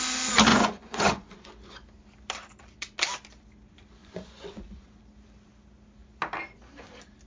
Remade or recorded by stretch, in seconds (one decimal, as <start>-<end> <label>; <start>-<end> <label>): 0.0-0.5 recorded; 0.5-1.5 remade; 1.5-4.0 recorded; 4.0-5.0 remade; 5.0-7.3 recorded